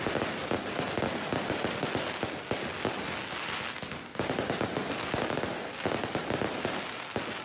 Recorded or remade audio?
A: recorded